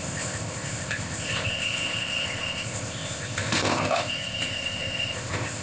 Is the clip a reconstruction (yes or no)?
yes